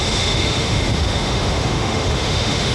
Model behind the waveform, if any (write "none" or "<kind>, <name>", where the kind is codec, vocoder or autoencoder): autoencoder, DAC-VAE